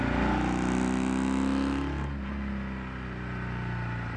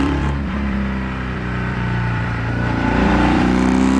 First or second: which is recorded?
first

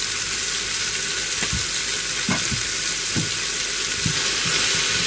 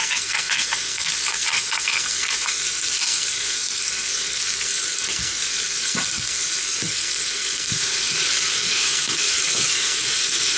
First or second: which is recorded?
first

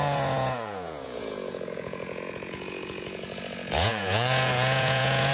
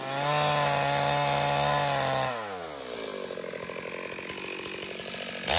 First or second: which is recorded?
second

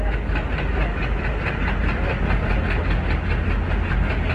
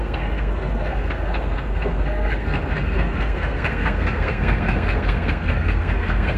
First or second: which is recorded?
first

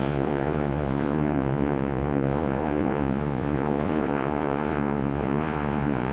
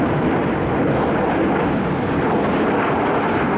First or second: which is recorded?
second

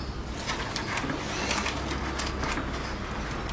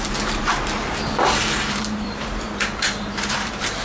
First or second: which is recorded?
first